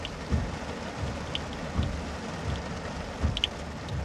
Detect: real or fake real